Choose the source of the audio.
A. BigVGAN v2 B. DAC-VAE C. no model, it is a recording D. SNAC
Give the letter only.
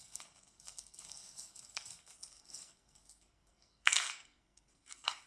D